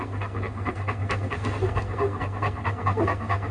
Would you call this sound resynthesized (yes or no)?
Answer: yes